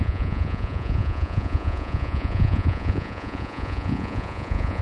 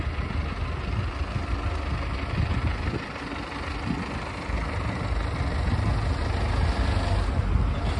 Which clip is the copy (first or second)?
first